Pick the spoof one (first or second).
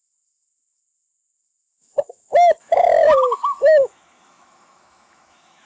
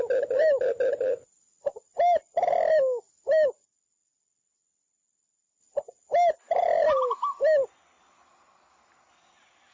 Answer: first